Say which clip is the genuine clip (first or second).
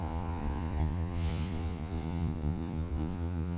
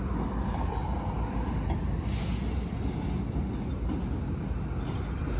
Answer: second